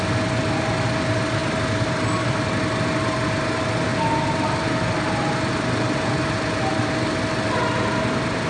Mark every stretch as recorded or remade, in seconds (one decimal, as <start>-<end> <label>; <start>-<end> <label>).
0.0-8.5 recorded